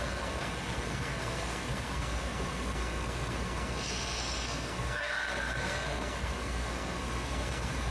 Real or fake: fake